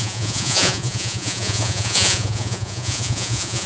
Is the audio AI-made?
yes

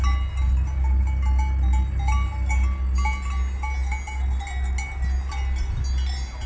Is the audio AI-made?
no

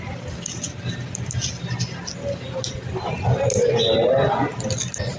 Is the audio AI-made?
no